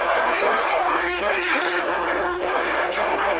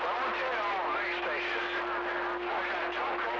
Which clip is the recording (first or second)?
second